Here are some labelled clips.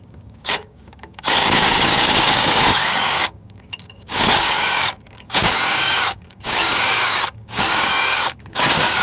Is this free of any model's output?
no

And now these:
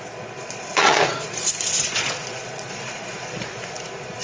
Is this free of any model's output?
no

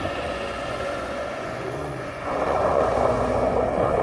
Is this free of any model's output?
no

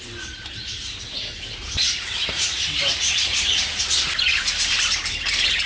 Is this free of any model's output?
yes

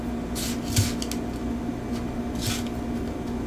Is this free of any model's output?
yes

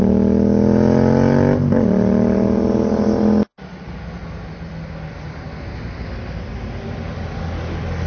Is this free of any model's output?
yes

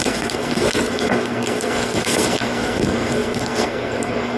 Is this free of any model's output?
no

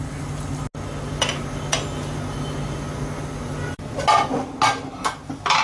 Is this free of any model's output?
yes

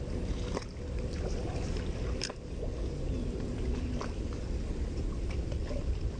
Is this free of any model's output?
yes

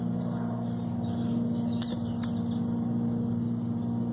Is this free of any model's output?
yes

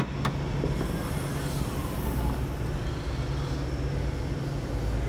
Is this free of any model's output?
yes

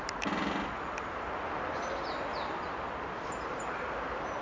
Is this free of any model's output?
yes